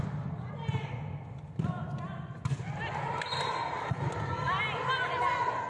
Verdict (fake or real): real